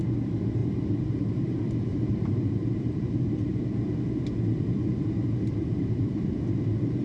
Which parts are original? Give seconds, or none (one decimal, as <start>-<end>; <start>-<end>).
0.0-0.6; 3.6-5.6; 6.3-7.0